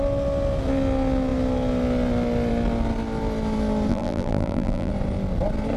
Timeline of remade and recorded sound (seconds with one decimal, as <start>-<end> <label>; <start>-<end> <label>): 0.0-3.9 recorded; 3.9-4.9 remade; 4.9-5.8 recorded